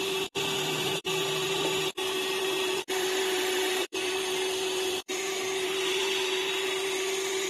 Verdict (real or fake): fake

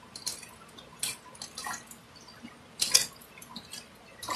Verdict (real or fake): real